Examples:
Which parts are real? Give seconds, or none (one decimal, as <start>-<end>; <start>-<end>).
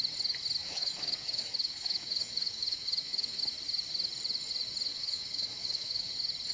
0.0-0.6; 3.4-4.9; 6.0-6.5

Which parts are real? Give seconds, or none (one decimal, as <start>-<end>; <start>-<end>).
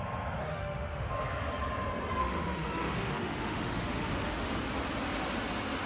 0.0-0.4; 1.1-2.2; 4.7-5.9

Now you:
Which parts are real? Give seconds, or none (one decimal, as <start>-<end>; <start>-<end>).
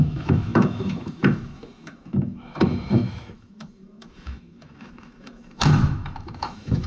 none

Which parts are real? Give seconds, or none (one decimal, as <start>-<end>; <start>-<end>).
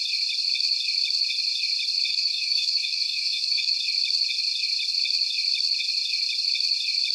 0.0-2.1; 3.7-7.1